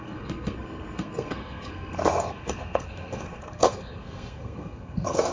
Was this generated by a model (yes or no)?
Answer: yes